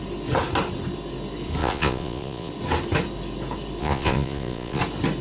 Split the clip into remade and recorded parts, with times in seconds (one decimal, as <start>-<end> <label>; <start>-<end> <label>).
0.0-1.6 recorded; 1.6-2.5 remade; 2.5-3.8 recorded; 3.8-4.8 remade; 4.8-5.2 recorded